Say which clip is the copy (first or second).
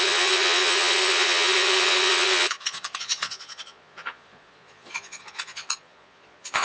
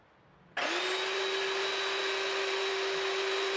first